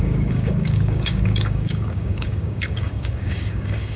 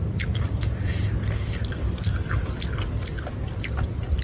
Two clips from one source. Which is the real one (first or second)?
second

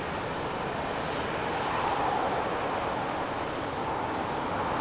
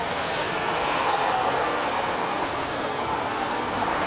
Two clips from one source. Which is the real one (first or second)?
first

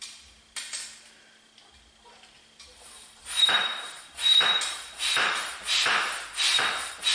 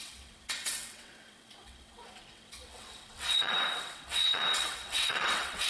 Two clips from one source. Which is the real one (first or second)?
first